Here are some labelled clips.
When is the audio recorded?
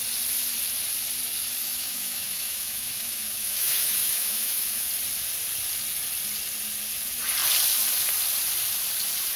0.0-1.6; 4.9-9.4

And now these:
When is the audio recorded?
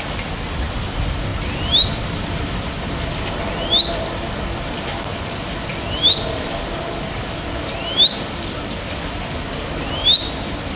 0.0-10.8